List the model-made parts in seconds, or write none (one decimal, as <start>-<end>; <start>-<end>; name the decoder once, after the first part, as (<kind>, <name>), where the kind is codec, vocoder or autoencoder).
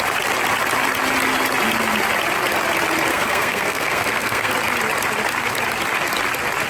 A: 3.1-4.5 (codec, SNAC)